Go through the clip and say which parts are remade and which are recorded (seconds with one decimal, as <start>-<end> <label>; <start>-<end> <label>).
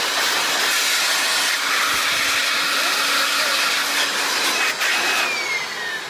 0.0-6.1 recorded